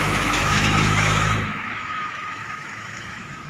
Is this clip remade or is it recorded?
remade